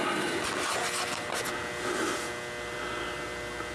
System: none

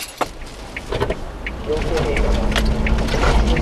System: none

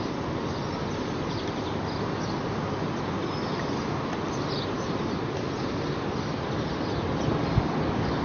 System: none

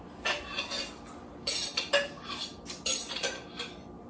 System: none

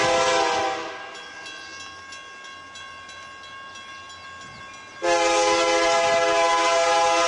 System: none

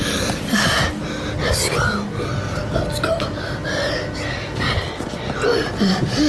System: none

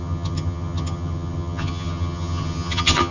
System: vocoder, HiFi-GAN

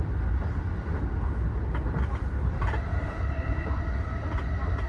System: none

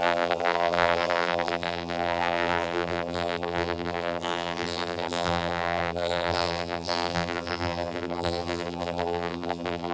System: vocoder, BigVGAN v2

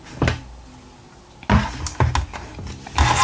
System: none